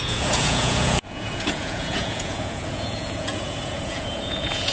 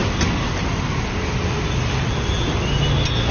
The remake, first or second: first